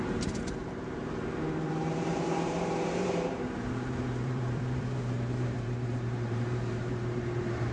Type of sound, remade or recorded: remade